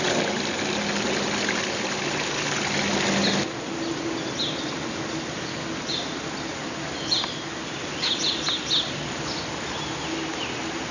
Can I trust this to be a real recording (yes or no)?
yes